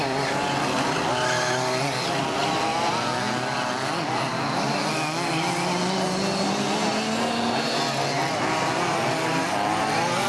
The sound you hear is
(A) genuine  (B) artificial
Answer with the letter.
A